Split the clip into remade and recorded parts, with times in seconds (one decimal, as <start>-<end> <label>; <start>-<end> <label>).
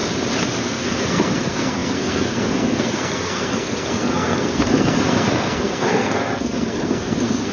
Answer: 0.0-0.6 recorded; 0.6-7.5 remade